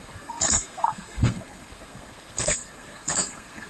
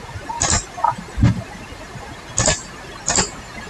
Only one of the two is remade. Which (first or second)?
first